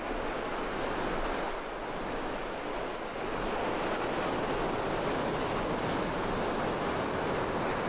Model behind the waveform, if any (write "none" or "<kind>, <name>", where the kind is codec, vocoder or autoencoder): none